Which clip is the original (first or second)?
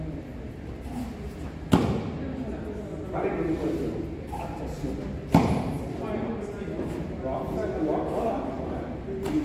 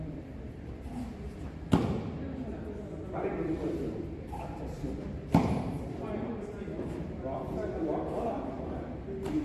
first